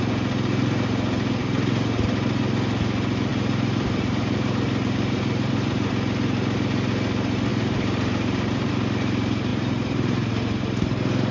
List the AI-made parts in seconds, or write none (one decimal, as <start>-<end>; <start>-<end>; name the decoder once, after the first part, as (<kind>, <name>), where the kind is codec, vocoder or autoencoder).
3.3-5.9 (vocoder, BigVGAN v2); 7.5-8.7; 9.5-10.3